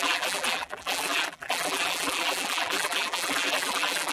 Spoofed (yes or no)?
yes